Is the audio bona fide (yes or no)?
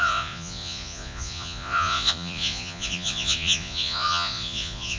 no